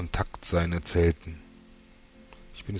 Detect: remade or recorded recorded